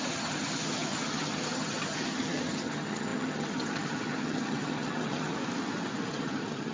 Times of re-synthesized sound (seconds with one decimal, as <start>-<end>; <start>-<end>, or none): 0.0-5.4; 6.1-6.7